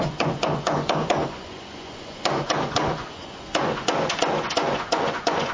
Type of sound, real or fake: fake